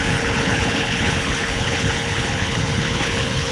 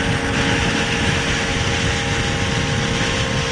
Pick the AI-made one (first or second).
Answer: first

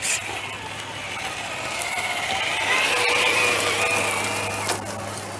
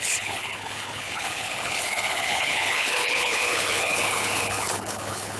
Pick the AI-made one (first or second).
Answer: second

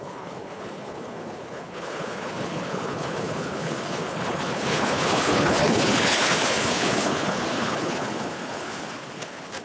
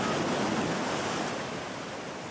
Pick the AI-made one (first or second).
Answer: first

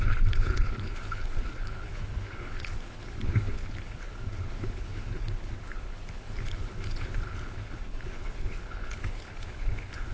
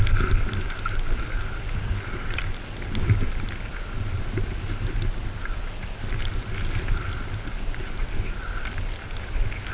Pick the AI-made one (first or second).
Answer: first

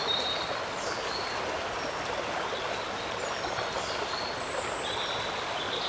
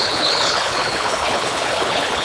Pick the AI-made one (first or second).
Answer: second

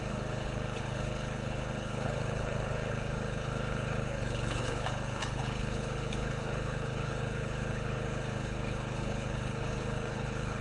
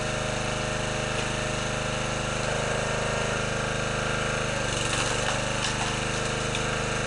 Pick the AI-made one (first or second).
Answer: first